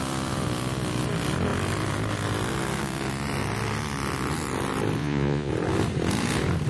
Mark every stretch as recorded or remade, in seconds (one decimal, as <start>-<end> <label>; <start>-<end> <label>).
0.0-5.0 recorded; 5.0-5.5 remade; 5.5-6.7 recorded